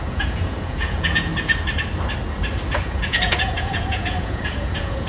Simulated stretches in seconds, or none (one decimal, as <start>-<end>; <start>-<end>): 0.0-1.3; 2.7-5.1